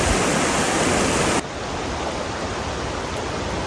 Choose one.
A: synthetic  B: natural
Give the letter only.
B